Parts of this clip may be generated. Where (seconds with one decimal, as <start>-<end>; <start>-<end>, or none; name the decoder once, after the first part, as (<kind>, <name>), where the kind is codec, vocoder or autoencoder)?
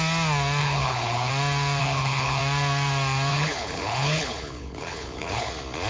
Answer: 0.6-1.3 (codec, HILCodec); 1.8-2.4; 3.3-5.5